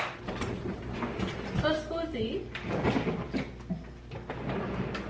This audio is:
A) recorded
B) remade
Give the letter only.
A